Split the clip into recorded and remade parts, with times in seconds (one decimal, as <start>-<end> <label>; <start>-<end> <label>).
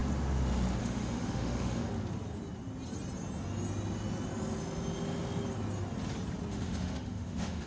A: 0.0-0.8 recorded; 0.8-1.9 remade; 1.9-6.5 recorded; 6.5-7.7 remade